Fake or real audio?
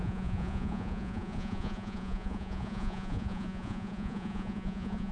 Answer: fake